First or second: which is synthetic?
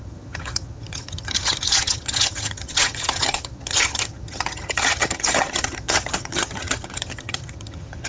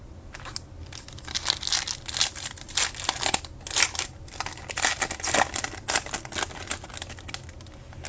first